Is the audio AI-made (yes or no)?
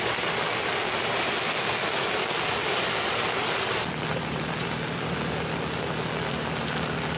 no